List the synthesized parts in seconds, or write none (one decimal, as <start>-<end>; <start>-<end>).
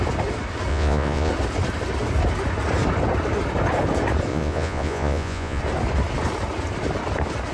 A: 0.7-1.3; 4.3-5.6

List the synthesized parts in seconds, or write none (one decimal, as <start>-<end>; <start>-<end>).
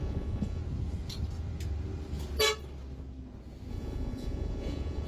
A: 0.0-0.6; 3.7-5.1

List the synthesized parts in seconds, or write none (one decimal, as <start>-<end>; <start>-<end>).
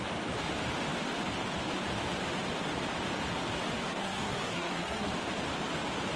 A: 3.9-5.1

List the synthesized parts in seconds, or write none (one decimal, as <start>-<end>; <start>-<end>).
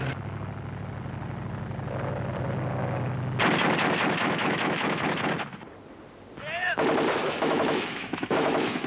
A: 4.2-5.0; 7.2-8.9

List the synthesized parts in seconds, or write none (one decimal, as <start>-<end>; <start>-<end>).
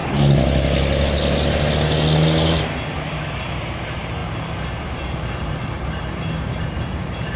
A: 3.6-7.4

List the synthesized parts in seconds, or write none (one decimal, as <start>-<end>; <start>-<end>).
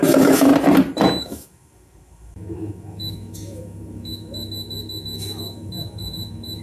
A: 0.0-0.5; 1.2-6.6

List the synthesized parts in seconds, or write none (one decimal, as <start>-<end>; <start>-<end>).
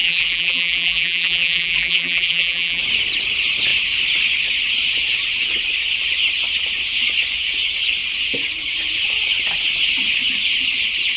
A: 0.0-2.8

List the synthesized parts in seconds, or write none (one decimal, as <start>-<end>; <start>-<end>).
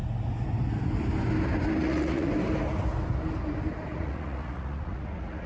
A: 1.8-2.3; 3.9-5.5